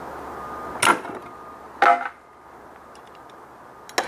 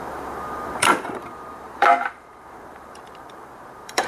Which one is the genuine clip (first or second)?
first